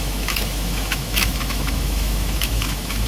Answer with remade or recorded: remade